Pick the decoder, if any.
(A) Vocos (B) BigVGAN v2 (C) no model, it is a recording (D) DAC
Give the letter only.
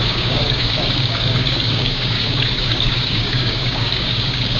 D